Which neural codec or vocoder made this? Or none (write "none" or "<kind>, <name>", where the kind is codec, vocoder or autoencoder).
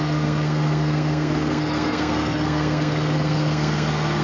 codec, SNAC